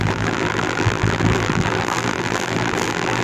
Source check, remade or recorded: remade